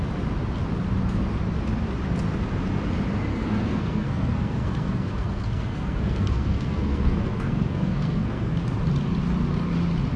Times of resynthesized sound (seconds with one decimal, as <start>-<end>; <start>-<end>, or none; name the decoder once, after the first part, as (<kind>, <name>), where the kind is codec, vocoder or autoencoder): 3.3-8.5 (codec, SNAC)